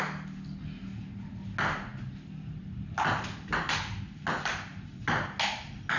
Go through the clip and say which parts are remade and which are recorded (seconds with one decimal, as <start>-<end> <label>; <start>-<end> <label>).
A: 0.0-6.0 recorded